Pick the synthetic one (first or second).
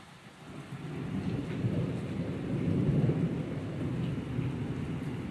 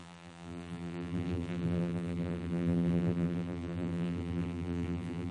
second